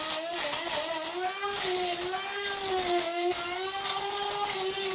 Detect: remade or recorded recorded